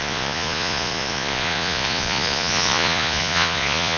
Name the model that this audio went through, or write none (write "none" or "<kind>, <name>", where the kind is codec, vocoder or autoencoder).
vocoder, Vocos